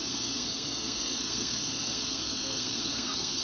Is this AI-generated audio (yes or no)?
yes